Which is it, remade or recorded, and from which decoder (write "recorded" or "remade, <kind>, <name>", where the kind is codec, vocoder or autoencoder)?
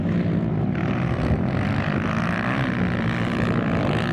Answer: recorded